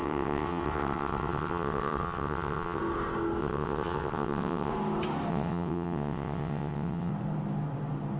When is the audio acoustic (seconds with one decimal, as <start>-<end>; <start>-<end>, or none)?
2.8-3.4; 4.7-5.3; 7.1-8.2

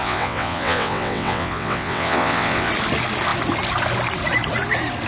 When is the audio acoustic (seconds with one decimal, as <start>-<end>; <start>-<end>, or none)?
2.7-5.1

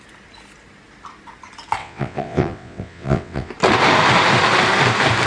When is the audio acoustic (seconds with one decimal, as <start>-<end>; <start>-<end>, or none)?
0.0-1.8; 3.5-5.3